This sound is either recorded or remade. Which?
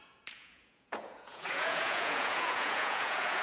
remade